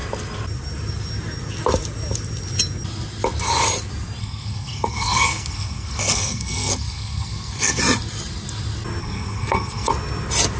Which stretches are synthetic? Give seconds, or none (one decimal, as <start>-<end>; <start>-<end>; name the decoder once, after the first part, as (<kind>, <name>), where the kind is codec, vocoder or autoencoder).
4.2-7.8 (codec, SNAC); 9.0-9.9